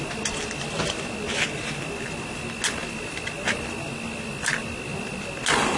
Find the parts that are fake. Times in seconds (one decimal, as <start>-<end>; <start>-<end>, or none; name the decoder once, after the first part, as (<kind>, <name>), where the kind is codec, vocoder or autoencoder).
none